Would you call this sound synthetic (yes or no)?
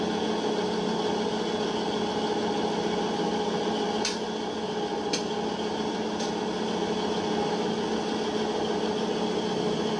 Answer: no